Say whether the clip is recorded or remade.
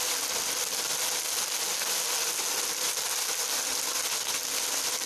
recorded